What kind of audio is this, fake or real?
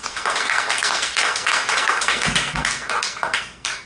fake